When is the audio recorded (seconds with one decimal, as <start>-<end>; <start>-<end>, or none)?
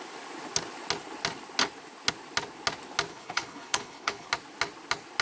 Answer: 0.0-3.1; 4.3-5.2